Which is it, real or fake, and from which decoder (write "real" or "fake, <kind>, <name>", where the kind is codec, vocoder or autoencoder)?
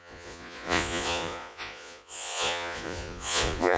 fake, vocoder, Vocos